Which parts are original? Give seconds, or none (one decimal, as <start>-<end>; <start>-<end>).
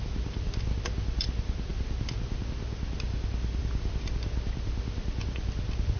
0.0-6.0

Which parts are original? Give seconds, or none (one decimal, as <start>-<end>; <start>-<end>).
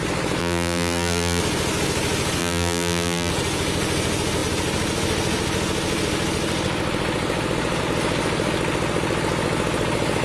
0.0-0.4; 1.4-2.4; 3.3-10.2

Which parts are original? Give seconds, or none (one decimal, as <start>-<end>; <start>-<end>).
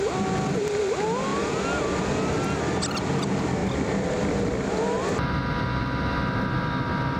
0.0-7.2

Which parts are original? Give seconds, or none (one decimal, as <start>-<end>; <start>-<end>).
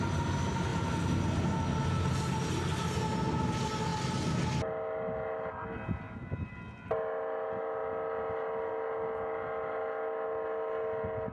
0.0-11.3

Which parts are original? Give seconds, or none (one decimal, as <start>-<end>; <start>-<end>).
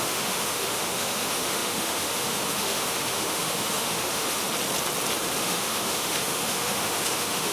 4.4-5.4